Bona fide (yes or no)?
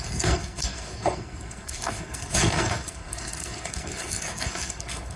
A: no